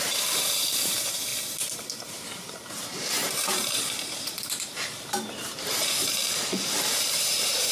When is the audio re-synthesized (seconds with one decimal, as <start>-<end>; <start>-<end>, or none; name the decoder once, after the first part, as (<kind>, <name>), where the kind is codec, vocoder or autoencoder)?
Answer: 0.0-1.3 (vocoder, BigVGAN v2); 2.0-6.2; 7.0-7.7